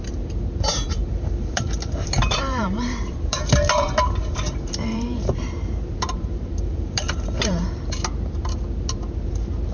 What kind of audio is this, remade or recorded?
remade